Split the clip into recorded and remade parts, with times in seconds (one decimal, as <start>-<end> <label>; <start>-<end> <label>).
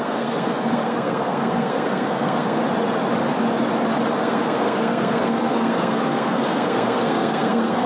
0.0-2.6 remade; 2.6-4.2 recorded; 4.2-7.9 remade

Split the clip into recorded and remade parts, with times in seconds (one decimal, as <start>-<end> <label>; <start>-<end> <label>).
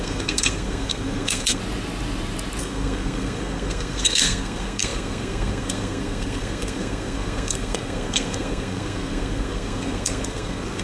0.0-1.6 remade; 1.6-2.6 recorded; 2.6-10.8 remade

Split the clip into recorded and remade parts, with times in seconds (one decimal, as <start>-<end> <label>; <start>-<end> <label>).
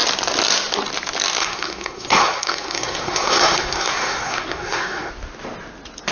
0.0-1.4 recorded; 1.4-5.1 remade; 5.1-6.1 recorded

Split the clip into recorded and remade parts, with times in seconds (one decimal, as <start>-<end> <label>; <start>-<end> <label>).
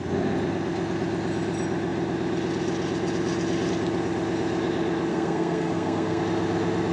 0.0-5.1 recorded; 5.1-6.2 remade; 6.2-6.9 recorded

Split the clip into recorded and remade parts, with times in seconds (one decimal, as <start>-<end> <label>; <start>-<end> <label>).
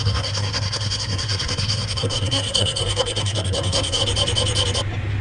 0.0-4.0 remade; 4.0-5.2 recorded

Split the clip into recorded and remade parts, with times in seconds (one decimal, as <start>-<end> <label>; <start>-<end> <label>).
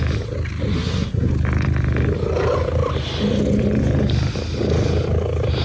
0.0-0.7 recorded; 0.7-1.3 remade; 1.3-5.6 recorded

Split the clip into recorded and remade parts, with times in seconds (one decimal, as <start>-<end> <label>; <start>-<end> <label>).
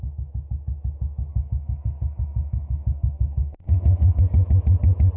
0.0-1.3 recorded; 1.3-4.2 remade; 4.2-5.2 recorded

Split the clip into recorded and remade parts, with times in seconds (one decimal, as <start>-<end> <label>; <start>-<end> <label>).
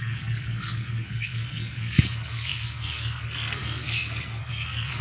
0.0-5.0 remade